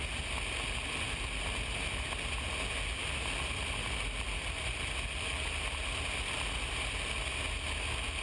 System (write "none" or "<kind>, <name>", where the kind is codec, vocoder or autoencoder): none